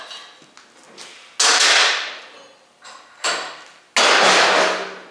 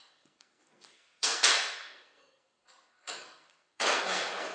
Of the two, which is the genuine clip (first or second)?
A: first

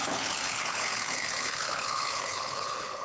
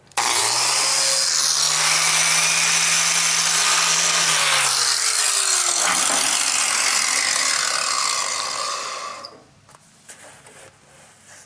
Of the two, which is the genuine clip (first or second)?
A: second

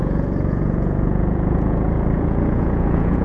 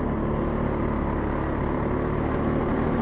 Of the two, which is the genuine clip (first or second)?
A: second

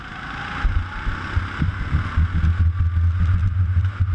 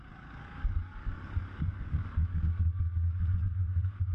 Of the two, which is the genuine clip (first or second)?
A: first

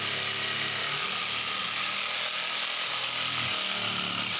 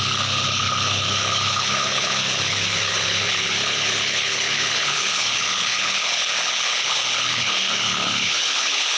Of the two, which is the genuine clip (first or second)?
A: first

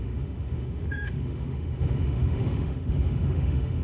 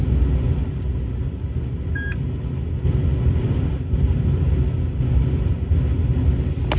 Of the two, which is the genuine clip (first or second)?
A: second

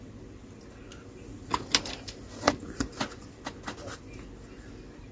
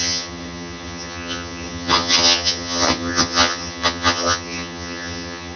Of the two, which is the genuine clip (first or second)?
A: first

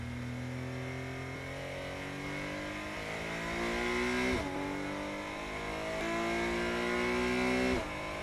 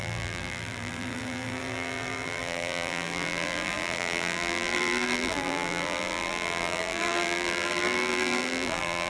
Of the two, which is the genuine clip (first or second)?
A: first